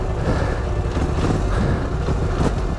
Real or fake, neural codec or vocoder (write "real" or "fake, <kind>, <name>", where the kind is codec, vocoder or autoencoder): real